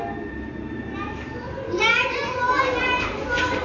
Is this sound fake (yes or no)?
no